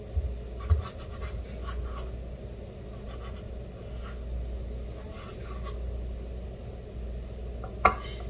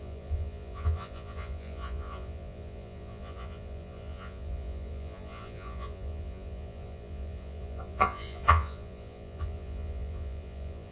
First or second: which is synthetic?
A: second